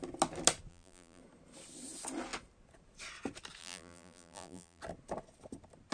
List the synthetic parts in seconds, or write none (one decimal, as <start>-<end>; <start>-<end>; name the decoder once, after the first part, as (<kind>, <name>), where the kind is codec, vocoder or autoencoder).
0.7-1.2 (vocoder, BigVGAN v2); 3.6-4.8